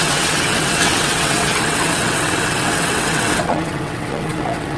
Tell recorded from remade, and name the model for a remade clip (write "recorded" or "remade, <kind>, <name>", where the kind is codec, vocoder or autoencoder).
remade, vocoder, WaveNeXt